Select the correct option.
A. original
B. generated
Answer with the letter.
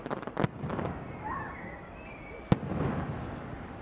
A